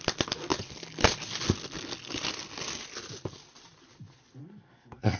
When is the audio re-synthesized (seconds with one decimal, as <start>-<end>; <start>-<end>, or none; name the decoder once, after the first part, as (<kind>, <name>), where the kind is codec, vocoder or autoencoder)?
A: 4.4-5.2 (codec, SNAC)